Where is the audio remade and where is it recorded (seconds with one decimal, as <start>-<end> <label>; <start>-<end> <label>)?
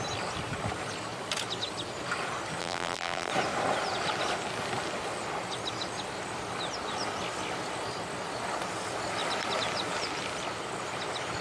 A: 0.0-2.6 recorded; 2.6-3.3 remade; 3.3-11.4 recorded